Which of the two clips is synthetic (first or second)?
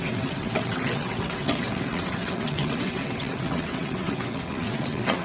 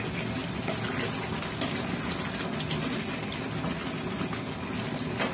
first